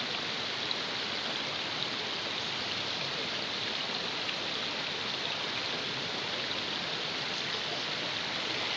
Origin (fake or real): real